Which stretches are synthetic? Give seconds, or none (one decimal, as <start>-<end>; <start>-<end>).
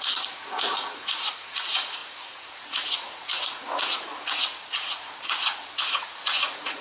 0.0-6.8